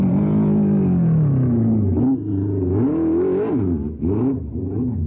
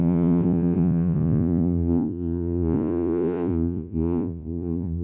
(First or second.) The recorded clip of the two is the first